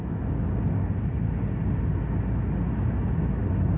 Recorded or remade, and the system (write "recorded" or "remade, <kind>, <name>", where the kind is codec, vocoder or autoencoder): recorded